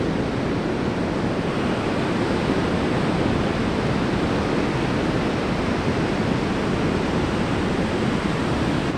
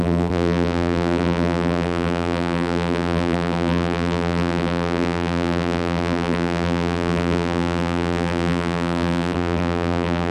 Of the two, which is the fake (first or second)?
second